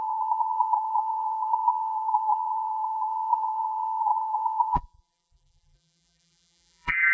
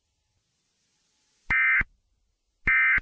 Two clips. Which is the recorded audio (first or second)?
second